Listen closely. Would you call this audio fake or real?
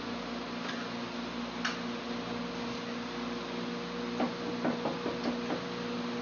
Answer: real